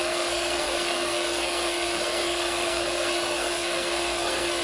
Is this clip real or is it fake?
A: fake